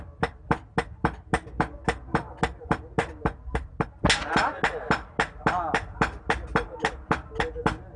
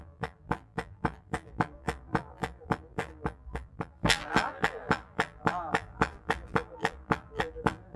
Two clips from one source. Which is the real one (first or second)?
first